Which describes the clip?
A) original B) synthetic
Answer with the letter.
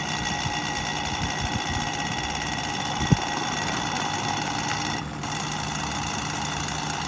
A